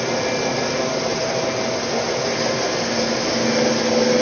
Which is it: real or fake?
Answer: real